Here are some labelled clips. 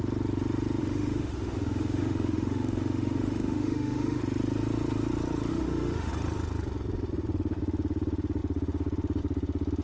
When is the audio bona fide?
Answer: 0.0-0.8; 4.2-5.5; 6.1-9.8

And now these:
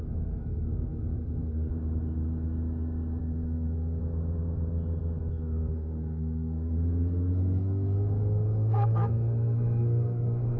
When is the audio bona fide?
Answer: 1.7-3.2; 4.0-5.3

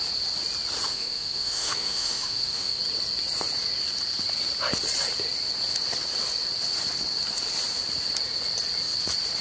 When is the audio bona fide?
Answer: 0.0-0.9; 2.8-9.4

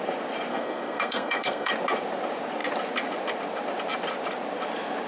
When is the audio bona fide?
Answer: 0.0-0.5; 1.7-5.1